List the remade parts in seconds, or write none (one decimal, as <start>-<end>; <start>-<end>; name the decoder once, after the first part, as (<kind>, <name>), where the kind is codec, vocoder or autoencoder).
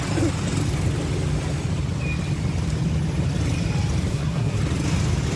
4.1-4.6 (codec, SNAC)